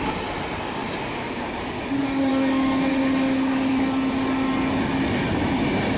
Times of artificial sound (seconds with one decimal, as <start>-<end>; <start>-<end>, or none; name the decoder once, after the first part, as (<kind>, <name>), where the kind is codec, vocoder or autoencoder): 2.3-3.8 (codec, DAC)